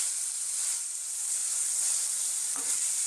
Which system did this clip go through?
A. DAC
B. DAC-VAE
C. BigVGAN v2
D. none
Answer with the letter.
D